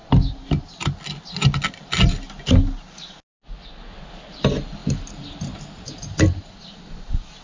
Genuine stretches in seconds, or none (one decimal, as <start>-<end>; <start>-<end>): 0.0-7.4